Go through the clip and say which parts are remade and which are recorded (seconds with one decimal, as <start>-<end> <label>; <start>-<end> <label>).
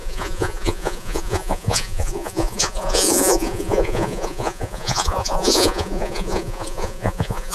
0.0-7.5 remade